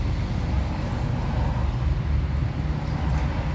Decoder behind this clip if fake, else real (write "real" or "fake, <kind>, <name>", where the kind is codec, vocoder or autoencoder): real